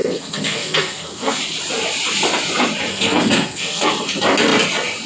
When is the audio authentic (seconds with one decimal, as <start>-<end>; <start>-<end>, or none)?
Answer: 1.4-2.9; 3.9-5.1